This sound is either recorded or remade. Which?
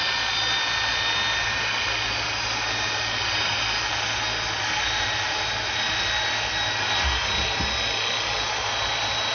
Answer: recorded